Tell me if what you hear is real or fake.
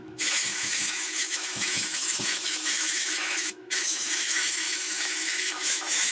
fake